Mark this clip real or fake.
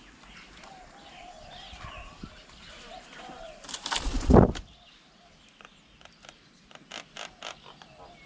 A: real